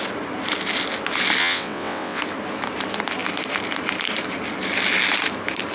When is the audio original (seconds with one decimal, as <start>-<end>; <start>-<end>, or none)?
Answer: 0.0-1.4; 2.2-5.7